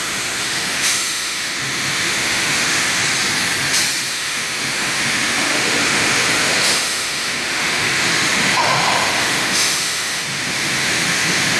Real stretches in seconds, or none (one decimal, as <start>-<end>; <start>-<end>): 3.0-4.1